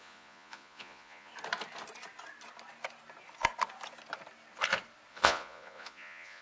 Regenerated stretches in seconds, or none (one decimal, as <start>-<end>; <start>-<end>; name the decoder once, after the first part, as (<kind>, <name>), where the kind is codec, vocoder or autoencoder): 0.0-1.3 (vocoder, Vocos); 5.1-6.4